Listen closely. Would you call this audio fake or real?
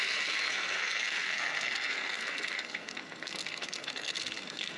fake